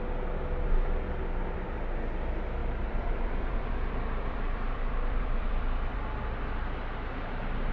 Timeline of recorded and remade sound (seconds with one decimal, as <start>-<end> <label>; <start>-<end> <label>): 0.0-2.6 recorded; 2.6-6.0 remade; 6.0-7.7 recorded